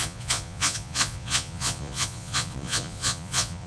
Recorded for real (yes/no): no